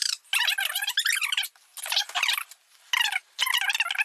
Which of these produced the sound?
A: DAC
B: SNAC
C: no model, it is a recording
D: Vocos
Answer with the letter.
C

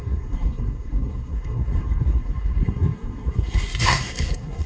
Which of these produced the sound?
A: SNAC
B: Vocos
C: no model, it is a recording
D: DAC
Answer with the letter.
A